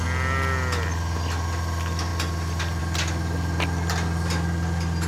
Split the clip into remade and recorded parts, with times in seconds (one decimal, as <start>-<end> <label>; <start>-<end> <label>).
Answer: 0.0-5.1 recorded